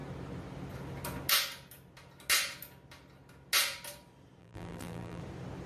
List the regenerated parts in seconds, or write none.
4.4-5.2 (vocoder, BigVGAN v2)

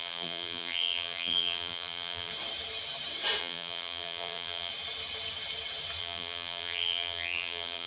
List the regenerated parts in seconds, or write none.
0.0-2.3 (vocoder, BigVGAN v2); 3.4-4.7; 6.0-7.9

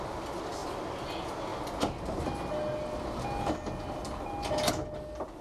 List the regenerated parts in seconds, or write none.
none

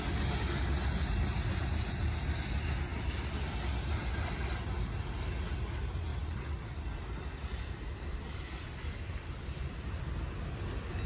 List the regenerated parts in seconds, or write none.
2.9-3.6 (vocoder, BigVGAN v2); 6.1-10.0

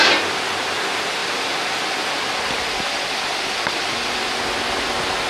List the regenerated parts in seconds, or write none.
1.2-4.4 (vocoder, BigVGAN v2)

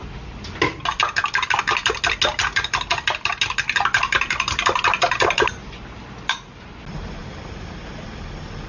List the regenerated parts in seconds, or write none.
none

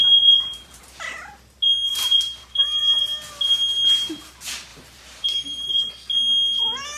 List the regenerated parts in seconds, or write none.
0.0-0.8 (vocoder, BigVGAN v2); 1.9-3.0; 4.7-5.9

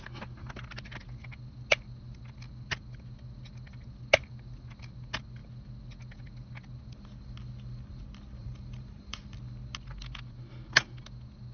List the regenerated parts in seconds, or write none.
8.4-9.4 (vocoder, BigVGAN v2)